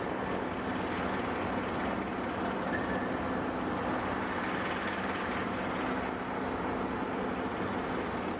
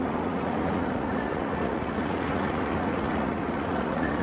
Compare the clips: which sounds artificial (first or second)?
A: second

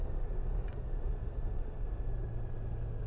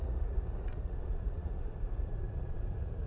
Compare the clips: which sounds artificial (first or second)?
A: second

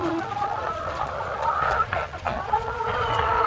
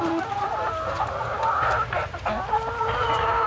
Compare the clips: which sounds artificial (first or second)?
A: first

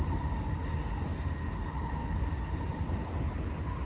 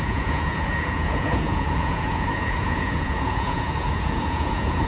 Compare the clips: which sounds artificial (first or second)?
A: second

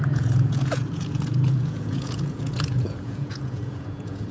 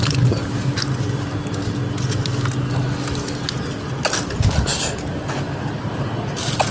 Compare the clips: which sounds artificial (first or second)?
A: first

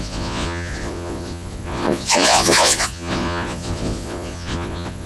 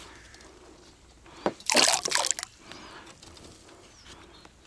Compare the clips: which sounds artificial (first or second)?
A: first